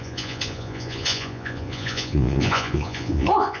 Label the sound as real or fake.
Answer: fake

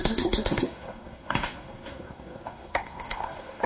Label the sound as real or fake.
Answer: fake